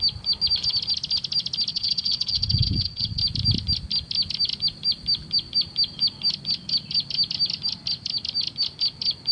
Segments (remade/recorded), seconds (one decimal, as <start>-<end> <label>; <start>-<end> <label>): 0.0-1.7 recorded; 1.7-3.2 remade; 3.2-9.3 recorded